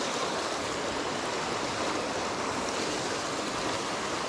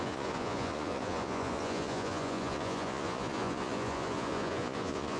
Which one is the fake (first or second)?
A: second